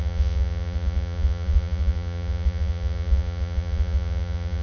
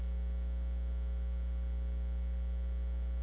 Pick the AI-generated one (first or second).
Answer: first